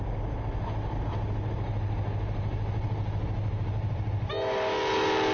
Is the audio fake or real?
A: real